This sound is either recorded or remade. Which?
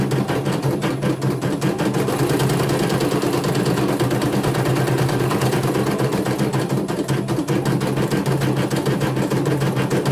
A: recorded